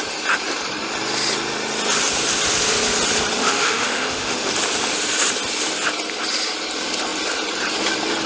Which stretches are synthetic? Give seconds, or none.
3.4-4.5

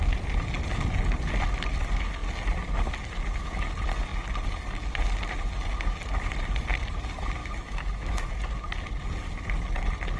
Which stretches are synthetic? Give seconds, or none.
7.4-8.3

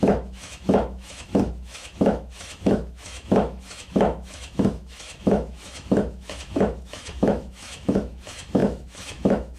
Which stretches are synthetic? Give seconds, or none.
0.0-9.6

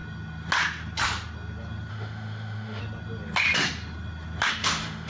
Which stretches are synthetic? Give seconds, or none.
1.9-2.8; 4.5-5.1

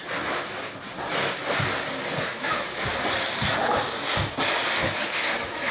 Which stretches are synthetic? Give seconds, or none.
2.3-2.9; 4.8-5.7